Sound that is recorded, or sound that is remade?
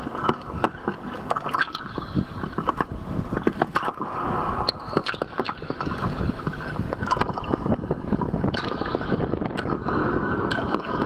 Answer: remade